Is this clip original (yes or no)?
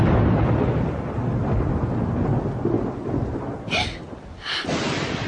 yes